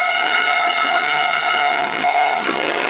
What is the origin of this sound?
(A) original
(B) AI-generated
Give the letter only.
B